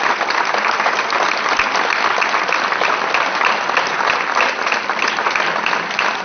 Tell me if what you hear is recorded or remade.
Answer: recorded